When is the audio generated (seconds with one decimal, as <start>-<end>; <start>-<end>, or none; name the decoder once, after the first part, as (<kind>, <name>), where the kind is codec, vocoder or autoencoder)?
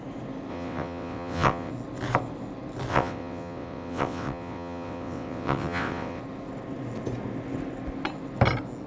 0.5-1.7 (vocoder, WaveNeXt); 2.9-6.2